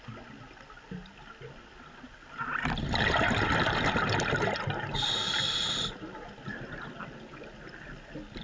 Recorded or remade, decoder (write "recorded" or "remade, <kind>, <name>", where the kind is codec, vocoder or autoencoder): recorded